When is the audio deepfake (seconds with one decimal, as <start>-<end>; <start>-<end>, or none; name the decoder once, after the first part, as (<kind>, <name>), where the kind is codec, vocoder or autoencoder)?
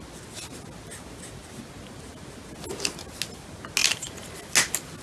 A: none